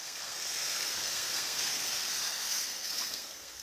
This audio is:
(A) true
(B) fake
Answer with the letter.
B